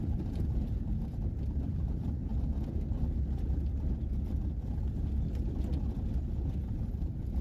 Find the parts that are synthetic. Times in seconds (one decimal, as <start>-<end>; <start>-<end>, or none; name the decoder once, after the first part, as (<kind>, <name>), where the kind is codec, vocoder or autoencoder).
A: 0.0-2.3 (vocoder, BigVGAN v2); 6.7-7.4